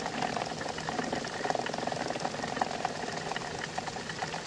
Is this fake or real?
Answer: real